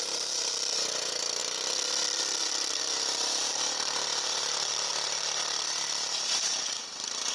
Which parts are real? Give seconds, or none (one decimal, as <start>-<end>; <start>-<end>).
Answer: 1.4-2.8